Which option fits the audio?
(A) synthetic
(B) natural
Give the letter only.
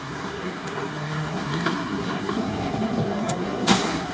A